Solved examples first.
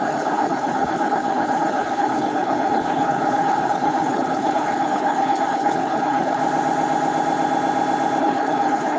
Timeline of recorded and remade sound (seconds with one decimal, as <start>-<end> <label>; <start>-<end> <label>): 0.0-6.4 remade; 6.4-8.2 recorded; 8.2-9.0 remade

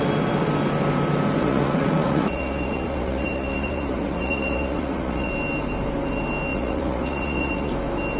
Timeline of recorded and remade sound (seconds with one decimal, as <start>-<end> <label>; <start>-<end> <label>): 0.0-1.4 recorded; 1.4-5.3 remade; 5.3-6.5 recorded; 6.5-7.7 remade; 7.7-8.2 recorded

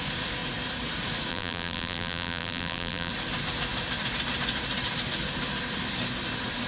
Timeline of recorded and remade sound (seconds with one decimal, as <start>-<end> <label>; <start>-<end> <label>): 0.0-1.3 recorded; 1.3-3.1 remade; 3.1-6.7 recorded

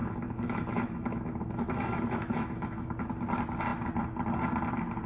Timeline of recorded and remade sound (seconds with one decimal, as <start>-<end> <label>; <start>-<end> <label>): 0.0-3.1 remade; 3.1-5.1 recorded

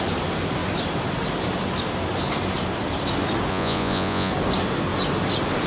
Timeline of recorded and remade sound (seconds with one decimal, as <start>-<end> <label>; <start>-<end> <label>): 0.0-3.5 recorded; 3.5-4.3 remade; 4.3-5.7 recorded